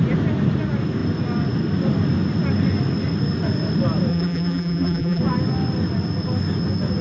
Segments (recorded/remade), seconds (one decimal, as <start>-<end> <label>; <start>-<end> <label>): 0.0-4.1 recorded; 4.1-5.2 remade; 5.2-7.0 recorded